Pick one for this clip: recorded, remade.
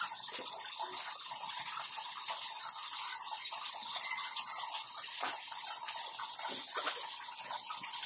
recorded